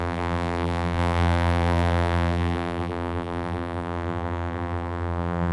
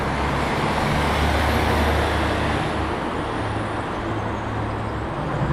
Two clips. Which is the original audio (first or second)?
second